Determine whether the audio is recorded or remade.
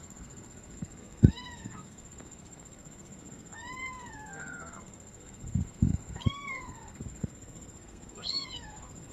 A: remade